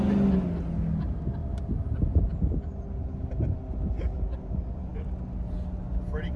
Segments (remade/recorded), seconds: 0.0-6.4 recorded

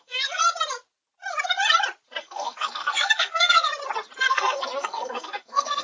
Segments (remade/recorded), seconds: 0.0-0.4 remade; 0.4-2.2 recorded; 2.2-3.7 remade; 3.7-4.3 recorded; 4.3-5.8 remade

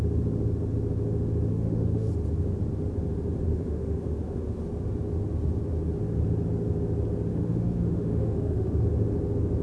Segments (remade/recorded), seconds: 0.0-1.5 recorded; 1.5-2.1 remade; 2.1-3.5 recorded; 3.5-4.6 remade; 4.6-7.3 recorded; 7.3-8.8 remade; 8.8-9.6 recorded

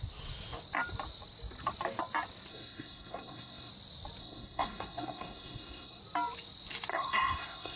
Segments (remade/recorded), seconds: 0.0-2.5 recorded; 2.5-3.7 remade; 3.7-4.2 recorded; 4.2-6.0 remade; 6.0-6.9 recorded; 6.9-7.8 remade

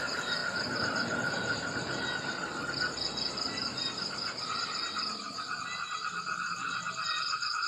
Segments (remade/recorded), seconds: 0.0-7.7 recorded

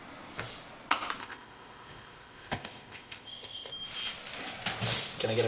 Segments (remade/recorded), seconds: 0.0-1.2 recorded; 1.2-3.7 remade; 3.7-5.5 recorded